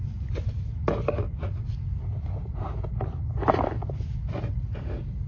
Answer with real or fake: real